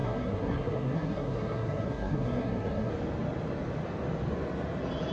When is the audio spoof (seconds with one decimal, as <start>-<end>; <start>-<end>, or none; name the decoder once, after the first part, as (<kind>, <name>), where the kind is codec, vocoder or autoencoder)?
0.0-2.9 (codec, SNAC)